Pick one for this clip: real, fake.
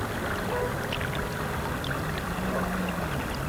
real